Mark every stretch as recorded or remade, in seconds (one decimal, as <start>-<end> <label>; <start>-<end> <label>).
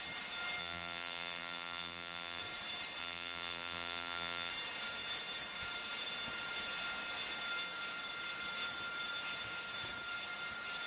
0.0-0.6 recorded; 0.6-2.4 remade; 2.4-3.0 recorded; 3.0-4.5 remade; 4.5-10.9 recorded